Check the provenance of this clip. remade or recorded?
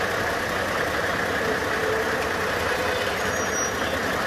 recorded